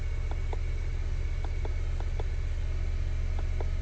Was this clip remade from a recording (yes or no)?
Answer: no